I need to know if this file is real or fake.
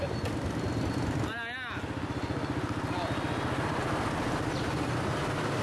real